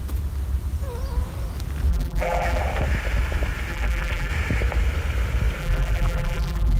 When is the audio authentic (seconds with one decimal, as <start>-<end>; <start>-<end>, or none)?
0.0-1.9; 2.6-3.7; 4.3-5.6